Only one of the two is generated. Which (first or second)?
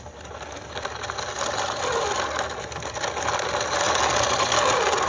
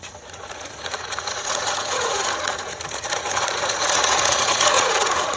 second